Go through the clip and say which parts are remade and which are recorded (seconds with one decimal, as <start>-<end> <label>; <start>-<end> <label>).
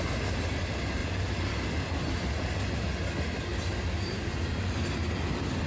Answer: 0.0-5.7 recorded